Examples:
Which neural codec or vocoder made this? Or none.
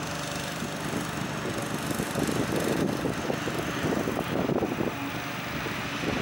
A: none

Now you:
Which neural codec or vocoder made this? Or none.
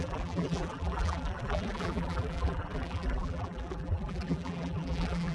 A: vocoder, BigVGAN v2